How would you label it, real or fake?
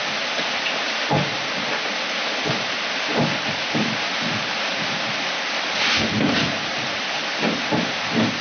real